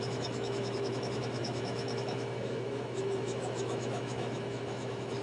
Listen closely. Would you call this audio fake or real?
fake